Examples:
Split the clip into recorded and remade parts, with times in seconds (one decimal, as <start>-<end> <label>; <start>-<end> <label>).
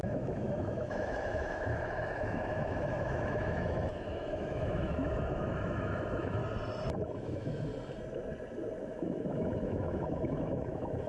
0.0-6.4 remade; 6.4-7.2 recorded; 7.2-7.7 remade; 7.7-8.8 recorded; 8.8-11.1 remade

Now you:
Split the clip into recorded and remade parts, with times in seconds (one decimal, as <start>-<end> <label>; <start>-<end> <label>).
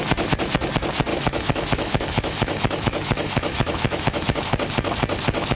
0.0-1.1 recorded; 1.1-4.4 remade; 4.4-5.5 recorded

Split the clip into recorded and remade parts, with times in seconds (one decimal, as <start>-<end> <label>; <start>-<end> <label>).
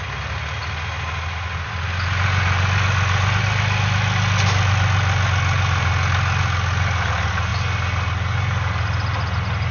0.0-9.7 recorded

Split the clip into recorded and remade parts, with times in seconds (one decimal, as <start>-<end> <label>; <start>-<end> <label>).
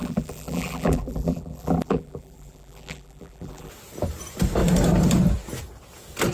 0.0-3.7 remade; 3.7-6.3 recorded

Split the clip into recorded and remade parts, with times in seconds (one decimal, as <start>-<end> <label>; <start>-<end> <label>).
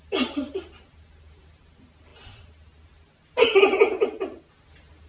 0.0-5.1 recorded